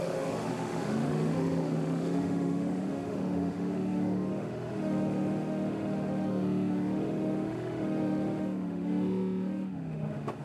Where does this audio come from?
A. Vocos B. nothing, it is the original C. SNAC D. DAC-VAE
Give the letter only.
D